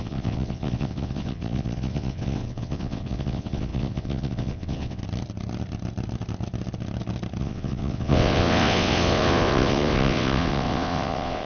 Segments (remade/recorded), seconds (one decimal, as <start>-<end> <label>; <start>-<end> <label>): 0.0-5.0 remade; 5.0-7.4 recorded; 7.4-11.5 remade